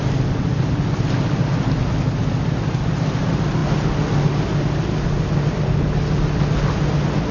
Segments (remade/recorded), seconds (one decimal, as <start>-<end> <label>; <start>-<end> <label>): 0.0-7.3 recorded